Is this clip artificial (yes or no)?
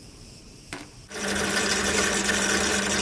no